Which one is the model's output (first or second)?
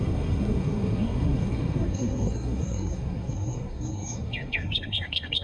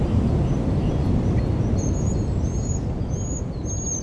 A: first